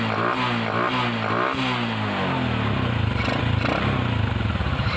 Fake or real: real